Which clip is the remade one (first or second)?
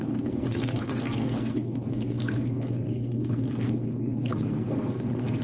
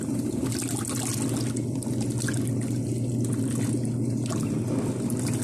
first